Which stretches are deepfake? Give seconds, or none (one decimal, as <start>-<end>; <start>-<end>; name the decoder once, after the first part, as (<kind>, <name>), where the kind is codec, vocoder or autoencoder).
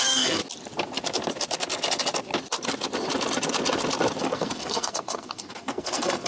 0.0-0.4 (codec, SNAC); 4.2-6.3